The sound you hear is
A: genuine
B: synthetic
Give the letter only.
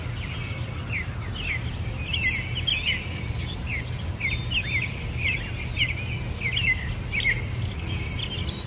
A